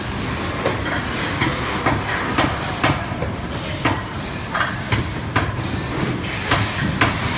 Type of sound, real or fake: real